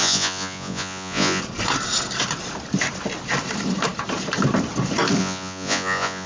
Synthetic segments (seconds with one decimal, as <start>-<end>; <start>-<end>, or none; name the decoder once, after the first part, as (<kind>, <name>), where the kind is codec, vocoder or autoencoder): 0.0-1.4 (vocoder, Vocos); 5.2-6.3

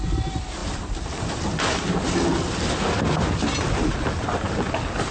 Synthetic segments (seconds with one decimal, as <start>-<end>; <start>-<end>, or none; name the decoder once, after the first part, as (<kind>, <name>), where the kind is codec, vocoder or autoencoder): none

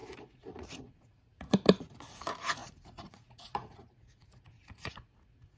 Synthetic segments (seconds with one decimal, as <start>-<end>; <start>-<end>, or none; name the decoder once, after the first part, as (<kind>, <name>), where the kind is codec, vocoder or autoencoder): 0.0-5.6 (vocoder, Vocos)

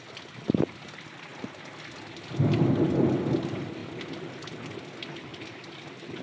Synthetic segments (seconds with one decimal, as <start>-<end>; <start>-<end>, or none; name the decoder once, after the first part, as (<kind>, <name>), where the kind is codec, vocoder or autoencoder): none

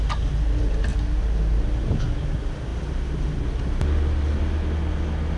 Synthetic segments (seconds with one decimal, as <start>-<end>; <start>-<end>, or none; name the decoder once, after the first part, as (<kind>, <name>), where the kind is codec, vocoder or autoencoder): none

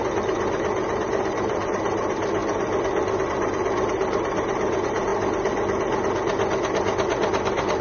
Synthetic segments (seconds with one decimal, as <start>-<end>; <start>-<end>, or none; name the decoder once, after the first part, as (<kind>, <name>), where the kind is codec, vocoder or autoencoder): 0.0-2.4 (vocoder, BigVGAN v2); 3.3-5.1

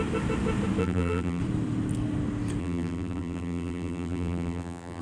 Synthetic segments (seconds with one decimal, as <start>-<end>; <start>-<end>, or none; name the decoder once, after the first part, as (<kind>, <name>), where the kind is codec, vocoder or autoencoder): 0.8-1.4 (vocoder, BigVGAN v2); 2.6-5.0

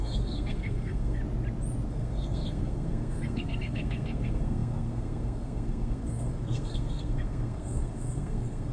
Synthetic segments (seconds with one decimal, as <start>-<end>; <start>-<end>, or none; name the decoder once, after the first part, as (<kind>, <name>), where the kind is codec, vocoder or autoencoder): 0.0-1.2 (codec, SNAC); 1.9-8.7